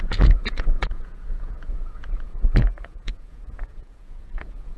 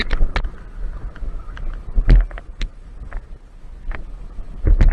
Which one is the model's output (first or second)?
first